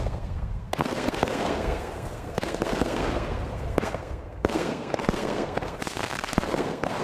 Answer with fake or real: fake